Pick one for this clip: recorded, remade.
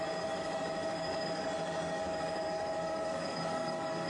remade